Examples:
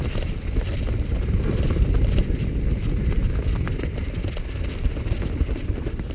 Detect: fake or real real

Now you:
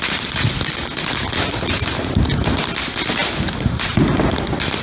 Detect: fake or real real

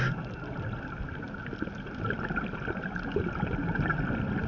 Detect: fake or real real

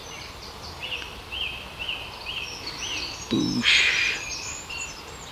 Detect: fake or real real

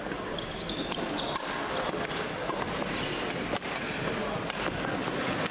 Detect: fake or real real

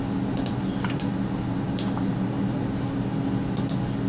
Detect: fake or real real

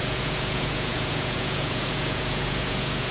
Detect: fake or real fake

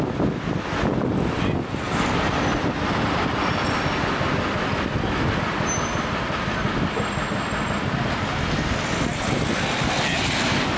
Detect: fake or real real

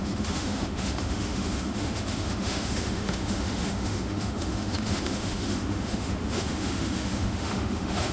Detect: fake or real fake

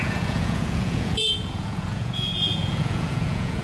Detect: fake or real fake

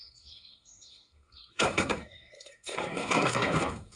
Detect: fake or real fake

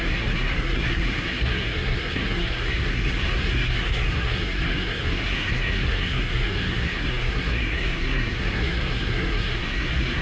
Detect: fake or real fake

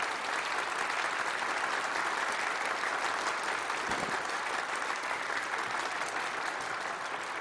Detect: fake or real real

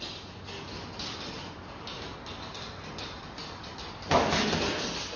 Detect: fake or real real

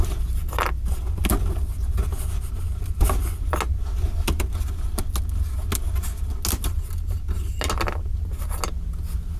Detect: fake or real real